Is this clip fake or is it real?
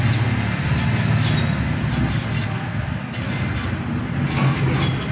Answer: real